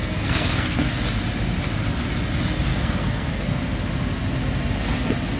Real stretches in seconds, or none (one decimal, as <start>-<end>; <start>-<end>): 1.0-2.7; 3.4-5.4